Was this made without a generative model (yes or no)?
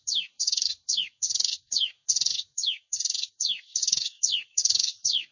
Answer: no